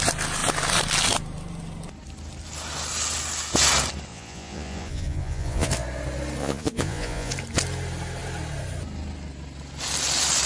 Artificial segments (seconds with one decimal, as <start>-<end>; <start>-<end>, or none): 4.1-5.7; 6.4-7.3